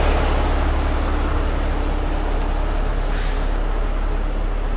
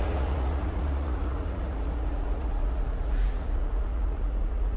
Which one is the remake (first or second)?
second